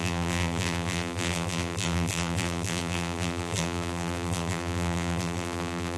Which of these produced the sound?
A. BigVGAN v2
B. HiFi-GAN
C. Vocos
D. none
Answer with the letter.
A